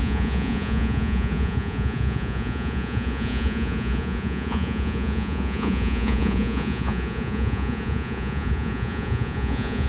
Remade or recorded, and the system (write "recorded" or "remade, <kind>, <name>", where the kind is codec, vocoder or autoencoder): remade, vocoder, Vocos